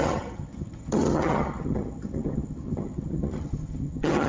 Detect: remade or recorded remade